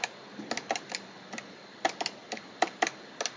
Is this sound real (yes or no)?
yes